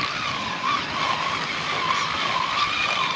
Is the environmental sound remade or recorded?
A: recorded